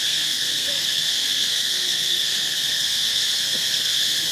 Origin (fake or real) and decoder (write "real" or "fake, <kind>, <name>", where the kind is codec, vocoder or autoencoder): fake, codec, SNAC